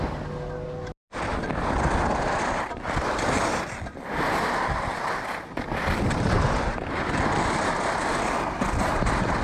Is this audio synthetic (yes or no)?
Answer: no